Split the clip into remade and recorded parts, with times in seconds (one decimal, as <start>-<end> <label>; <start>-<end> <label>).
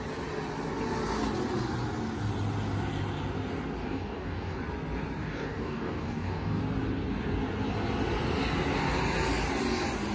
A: 0.0-3.8 recorded; 3.8-4.6 remade; 4.6-5.2 recorded; 5.2-6.6 remade; 6.6-10.1 recorded